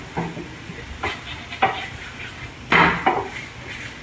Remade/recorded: recorded